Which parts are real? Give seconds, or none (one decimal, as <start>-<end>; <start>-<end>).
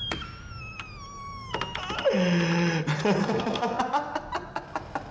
0.0-3.2; 3.8-5.1